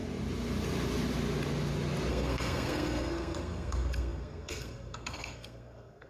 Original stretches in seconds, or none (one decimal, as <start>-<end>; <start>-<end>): 0.0-2.1